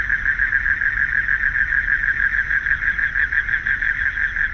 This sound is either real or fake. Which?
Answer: real